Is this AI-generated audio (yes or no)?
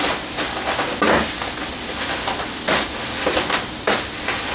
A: no